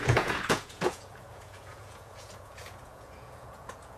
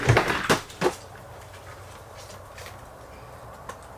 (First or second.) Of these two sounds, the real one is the second